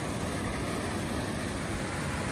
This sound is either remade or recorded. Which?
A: remade